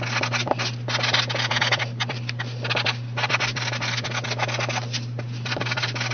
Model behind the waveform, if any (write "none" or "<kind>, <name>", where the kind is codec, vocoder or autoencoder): none